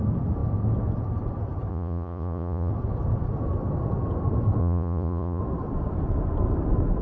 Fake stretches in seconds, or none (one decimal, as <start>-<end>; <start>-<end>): 1.7-2.7; 4.6-5.4